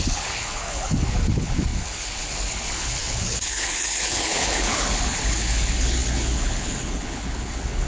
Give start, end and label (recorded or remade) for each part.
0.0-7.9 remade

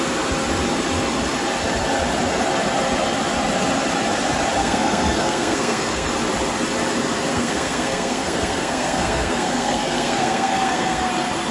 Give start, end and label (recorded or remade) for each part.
0.0-4.6 recorded; 4.6-6.1 remade; 6.1-7.3 recorded; 7.3-11.1 remade; 11.1-11.5 recorded

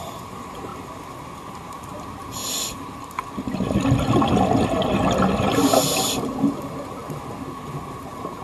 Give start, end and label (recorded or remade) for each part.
0.0-0.7 remade; 0.7-1.5 recorded; 1.5-2.4 remade; 2.4-6.2 recorded; 6.2-8.4 remade

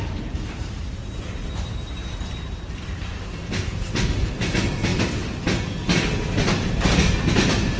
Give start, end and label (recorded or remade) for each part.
0.0-3.1 remade; 3.1-4.4 recorded; 4.4-4.9 remade; 4.9-7.3 recorded; 7.3-7.8 remade

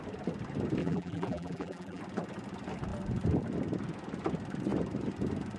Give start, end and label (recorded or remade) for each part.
0.0-0.8 recorded; 0.8-2.0 remade; 2.0-5.6 recorded